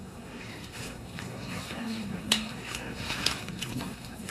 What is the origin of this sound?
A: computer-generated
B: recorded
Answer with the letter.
A